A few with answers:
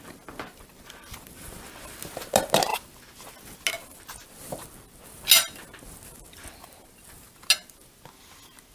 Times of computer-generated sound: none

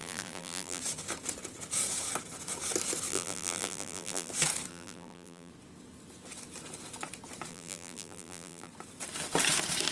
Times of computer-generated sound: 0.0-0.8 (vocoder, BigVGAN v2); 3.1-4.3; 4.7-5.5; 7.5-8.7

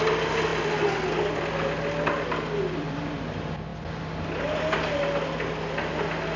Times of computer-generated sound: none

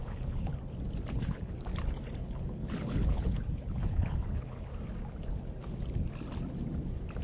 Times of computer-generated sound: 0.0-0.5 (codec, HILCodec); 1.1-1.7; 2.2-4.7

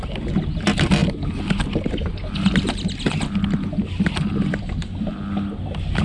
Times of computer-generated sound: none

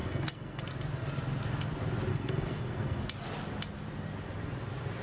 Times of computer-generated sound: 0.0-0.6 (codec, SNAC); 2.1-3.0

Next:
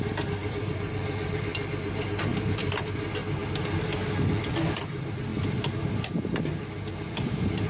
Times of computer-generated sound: 0.0-3.2 (vocoder, BigVGAN v2); 4.4-5.3; 6.0-7.7

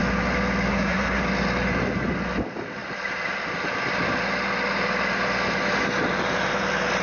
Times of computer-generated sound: 0.7-1.2 (codec, SNAC)